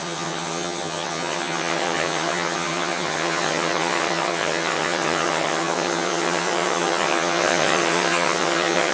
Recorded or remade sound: remade